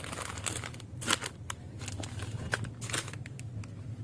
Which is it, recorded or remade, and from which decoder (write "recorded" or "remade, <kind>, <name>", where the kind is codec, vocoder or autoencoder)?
recorded